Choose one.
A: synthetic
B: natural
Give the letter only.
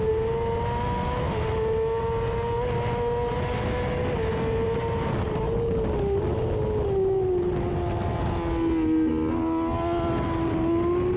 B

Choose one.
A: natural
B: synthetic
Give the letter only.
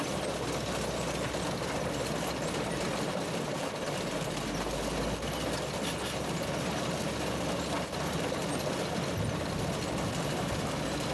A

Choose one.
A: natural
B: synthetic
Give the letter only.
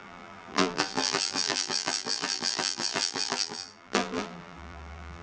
B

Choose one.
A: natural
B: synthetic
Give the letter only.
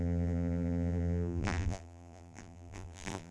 B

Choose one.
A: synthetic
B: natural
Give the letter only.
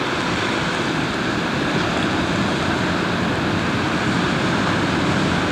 B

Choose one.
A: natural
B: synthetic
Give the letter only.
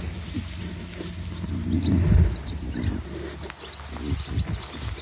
A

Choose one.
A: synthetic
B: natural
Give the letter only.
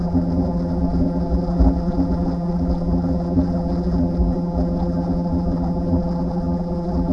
A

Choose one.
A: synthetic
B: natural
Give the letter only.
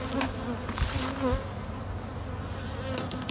B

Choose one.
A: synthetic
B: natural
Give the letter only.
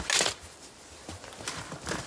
B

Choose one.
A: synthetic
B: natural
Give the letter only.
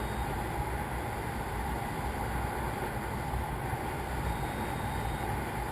B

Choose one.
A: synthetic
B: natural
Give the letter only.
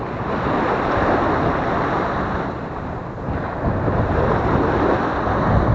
B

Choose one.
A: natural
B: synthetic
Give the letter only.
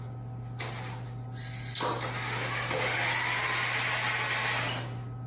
A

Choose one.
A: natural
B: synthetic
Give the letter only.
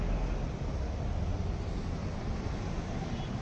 A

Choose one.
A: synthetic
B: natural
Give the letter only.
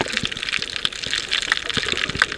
B